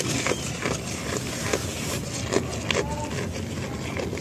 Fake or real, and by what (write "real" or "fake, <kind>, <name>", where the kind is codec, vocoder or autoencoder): real